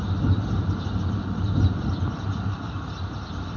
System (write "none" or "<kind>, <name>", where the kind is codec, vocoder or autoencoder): none